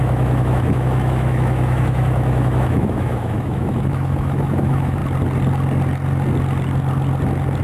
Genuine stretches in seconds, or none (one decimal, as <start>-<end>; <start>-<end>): 5.0-7.6